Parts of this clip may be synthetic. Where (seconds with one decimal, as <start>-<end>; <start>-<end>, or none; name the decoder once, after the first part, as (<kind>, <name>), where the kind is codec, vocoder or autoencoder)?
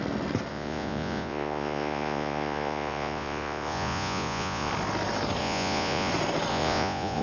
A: 0.5-4.7 (vocoder, Vocos); 5.4-6.1; 6.5-7.2